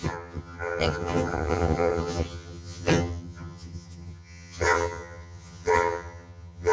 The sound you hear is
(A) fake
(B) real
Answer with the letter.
A